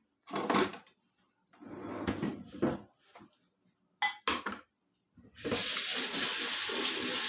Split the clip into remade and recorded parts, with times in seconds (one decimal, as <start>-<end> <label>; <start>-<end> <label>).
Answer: 0.0-7.3 recorded